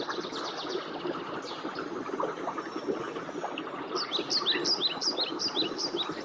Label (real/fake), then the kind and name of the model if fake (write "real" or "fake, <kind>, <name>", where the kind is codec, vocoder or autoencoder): real